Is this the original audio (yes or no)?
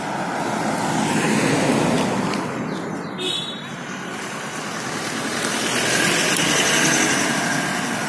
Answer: yes